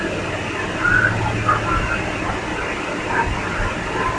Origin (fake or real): real